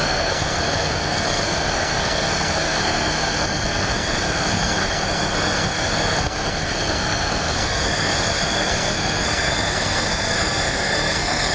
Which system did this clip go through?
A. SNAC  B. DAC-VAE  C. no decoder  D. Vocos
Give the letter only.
A